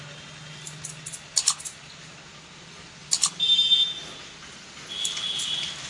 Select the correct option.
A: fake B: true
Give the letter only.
B